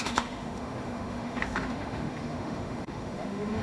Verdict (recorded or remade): remade